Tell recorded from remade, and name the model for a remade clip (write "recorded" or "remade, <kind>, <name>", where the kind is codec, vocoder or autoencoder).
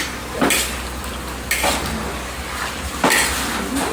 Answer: recorded